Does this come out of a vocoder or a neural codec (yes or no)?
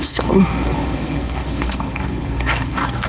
yes